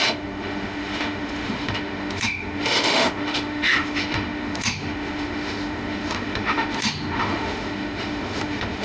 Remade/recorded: remade